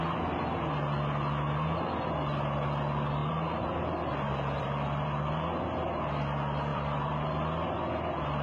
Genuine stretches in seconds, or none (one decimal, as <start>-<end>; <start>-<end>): 0.0-3.2; 5.6-6.7; 7.2-8.4